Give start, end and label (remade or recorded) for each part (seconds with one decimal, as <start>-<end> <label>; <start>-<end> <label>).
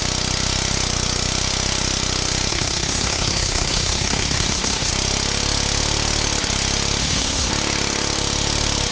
0.0-2.5 recorded; 2.5-4.9 remade; 4.9-7.0 recorded; 7.0-7.5 remade; 7.5-8.9 recorded